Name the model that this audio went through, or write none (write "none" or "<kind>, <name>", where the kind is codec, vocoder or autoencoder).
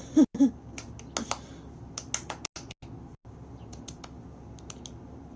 none